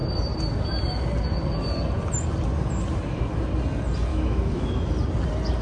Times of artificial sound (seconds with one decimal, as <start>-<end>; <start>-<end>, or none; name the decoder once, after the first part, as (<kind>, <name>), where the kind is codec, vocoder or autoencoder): 4.1-4.9 (autoencoder, DAC-VAE)